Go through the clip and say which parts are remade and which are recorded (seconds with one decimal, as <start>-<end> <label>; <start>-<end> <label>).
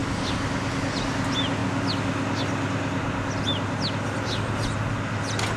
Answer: 0.0-5.6 recorded